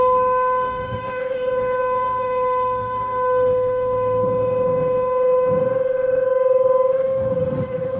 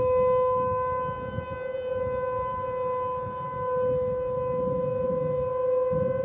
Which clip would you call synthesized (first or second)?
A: first